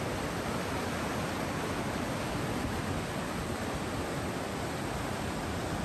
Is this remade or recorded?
recorded